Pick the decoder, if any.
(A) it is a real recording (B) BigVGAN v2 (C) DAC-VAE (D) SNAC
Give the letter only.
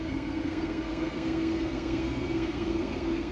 D